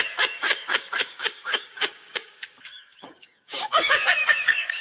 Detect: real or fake fake